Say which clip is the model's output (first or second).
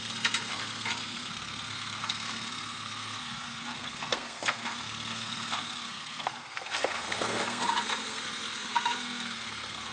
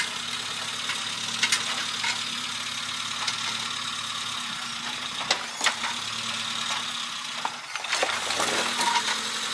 first